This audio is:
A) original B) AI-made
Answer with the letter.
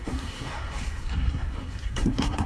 B